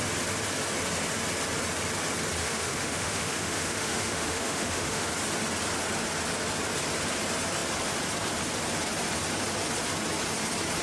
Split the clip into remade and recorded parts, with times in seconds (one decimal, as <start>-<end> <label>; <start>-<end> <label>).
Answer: 0.0-2.4 recorded; 2.4-5.1 remade; 5.1-10.8 recorded